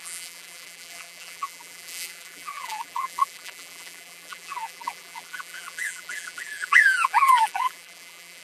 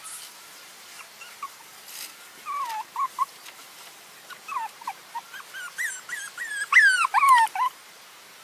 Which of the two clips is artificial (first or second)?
first